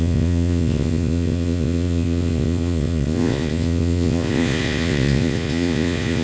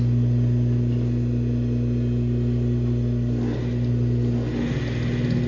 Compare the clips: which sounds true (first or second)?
second